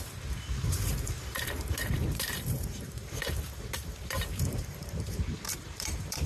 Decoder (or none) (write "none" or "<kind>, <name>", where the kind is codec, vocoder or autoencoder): vocoder, BigVGAN v2